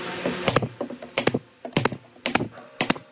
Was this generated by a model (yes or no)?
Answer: no